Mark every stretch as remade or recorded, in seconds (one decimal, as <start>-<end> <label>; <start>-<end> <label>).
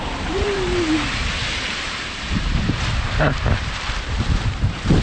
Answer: 0.0-5.0 remade